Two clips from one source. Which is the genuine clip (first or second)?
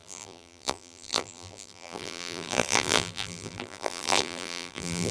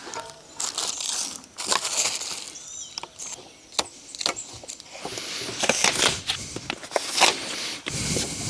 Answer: second